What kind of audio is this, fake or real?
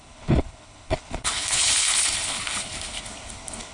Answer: fake